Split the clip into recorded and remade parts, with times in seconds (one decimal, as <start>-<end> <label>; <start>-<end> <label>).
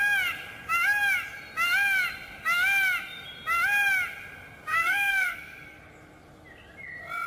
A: 0.0-4.7 recorded; 4.7-5.8 remade; 5.8-7.3 recorded